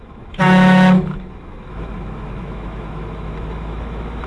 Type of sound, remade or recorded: remade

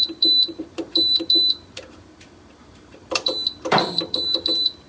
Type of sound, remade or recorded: remade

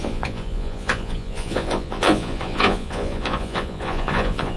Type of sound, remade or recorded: remade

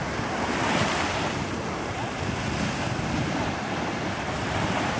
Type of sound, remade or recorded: recorded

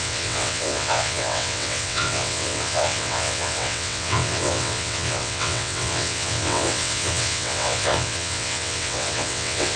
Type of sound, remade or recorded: remade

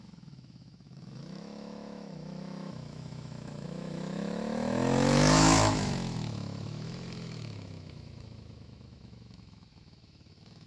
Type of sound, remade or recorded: remade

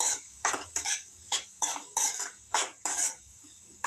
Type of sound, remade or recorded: remade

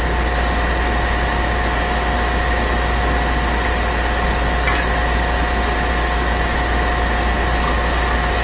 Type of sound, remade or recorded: recorded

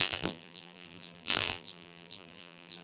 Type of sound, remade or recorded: remade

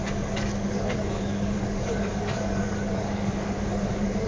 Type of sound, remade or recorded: remade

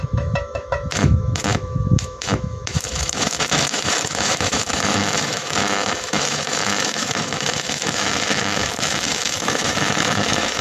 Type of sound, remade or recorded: remade